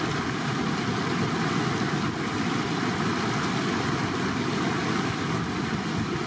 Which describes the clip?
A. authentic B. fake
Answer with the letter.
A